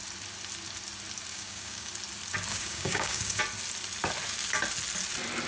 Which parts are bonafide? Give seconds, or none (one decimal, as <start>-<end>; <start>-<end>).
0.0-1.3; 1.9-2.5; 3.4-5.5